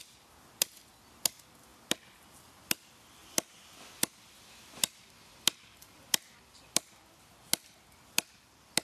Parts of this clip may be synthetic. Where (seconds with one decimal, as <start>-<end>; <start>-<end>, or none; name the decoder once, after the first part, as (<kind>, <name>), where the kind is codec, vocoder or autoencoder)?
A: none